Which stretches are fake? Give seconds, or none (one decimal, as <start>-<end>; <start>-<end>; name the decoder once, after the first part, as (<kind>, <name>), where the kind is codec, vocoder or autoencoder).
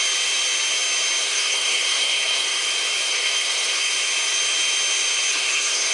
1.2-2.6 (codec, SNAC); 3.1-3.9; 5.3-5.9